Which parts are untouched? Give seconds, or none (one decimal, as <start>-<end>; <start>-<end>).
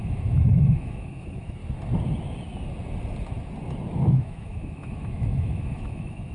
1.6-4.1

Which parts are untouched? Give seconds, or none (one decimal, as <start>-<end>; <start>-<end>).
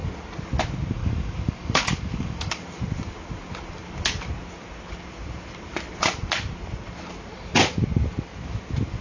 0.0-1.0; 2.6-9.0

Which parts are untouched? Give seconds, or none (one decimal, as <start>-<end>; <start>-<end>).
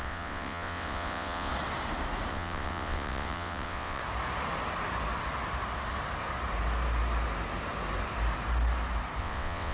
1.5-2.3; 4.0-9.2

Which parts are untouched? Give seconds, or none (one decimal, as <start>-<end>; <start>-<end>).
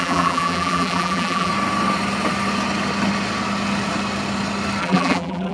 1.5-4.8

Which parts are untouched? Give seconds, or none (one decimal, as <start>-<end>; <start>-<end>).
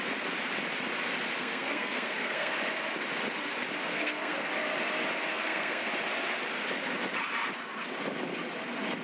0.0-1.4; 2.5-3.9; 4.5-5.3; 5.9-9.0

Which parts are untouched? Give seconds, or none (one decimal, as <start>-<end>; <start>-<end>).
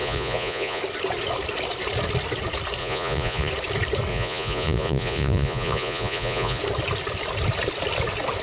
0.8-2.8; 3.5-4.1; 6.6-8.4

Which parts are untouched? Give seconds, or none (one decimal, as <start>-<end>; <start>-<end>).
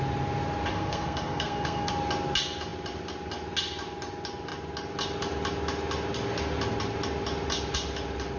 0.0-0.7; 1.9-8.4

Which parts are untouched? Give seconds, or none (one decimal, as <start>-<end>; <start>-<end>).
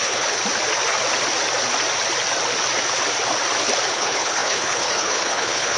0.4-3.9